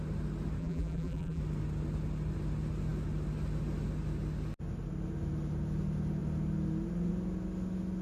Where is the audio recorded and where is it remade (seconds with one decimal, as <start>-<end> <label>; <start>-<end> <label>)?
0.0-0.6 recorded; 0.6-1.4 remade; 1.4-8.0 recorded